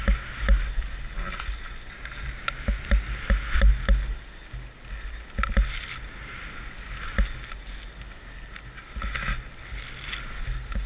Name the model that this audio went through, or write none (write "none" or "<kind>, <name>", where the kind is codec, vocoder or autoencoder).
none